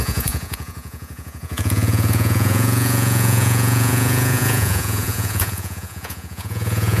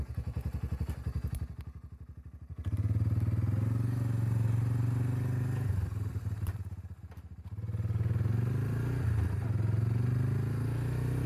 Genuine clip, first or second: second